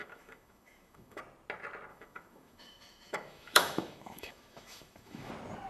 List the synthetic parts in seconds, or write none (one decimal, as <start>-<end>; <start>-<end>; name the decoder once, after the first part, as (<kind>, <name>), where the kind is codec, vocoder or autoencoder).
0.0-1.2 (autoencoder, DAC-VAE); 1.9-5.3